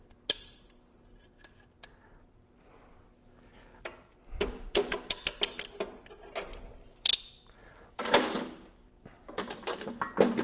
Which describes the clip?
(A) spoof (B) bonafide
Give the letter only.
B